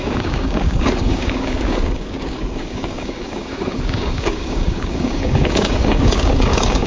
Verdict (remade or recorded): remade